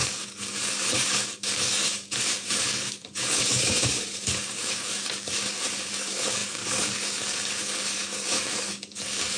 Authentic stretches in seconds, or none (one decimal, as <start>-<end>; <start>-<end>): none